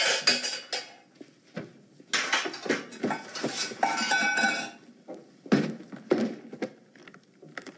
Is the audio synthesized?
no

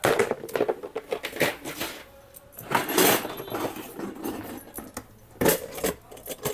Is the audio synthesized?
no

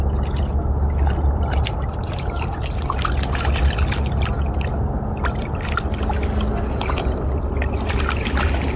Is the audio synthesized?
no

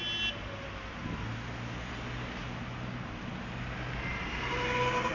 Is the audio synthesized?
no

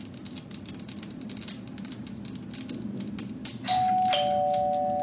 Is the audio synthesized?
no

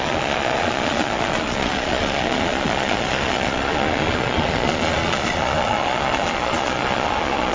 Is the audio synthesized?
yes